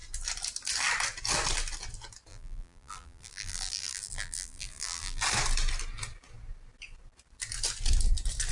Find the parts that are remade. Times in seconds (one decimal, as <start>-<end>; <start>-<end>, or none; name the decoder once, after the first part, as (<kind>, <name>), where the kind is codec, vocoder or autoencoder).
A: 2.3-5.2 (vocoder, BigVGAN v2)